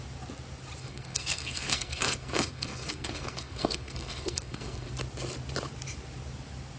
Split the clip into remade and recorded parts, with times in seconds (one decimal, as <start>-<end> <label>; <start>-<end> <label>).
0.0-0.8 recorded; 0.8-4.9 remade; 4.9-6.8 recorded